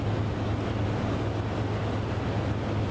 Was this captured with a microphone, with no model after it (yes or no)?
yes